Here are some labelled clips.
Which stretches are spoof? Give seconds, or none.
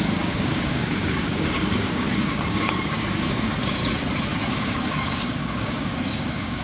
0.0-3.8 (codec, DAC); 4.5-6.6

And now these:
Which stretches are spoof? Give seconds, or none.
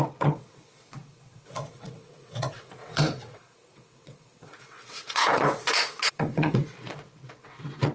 0.0-7.9 (vocoder, WaveNeXt)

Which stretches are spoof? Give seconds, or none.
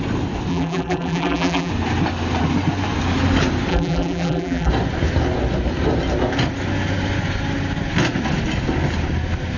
0.5-1.7 (vocoder, BigVGAN v2); 3.7-4.7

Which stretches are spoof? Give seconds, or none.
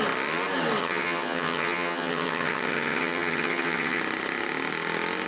0.8-4.0 (vocoder, HiFi-GAN)